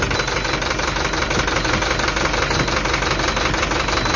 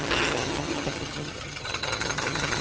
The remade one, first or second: second